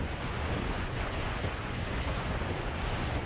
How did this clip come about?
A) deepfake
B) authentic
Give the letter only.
A